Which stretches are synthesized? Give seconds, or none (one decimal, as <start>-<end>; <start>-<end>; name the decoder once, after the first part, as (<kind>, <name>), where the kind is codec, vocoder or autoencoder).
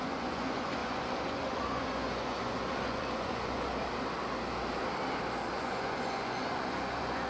0.0-3.7 (vocoder, Vocos); 5.5-7.3